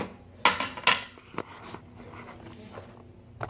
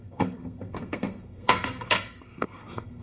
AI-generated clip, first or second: second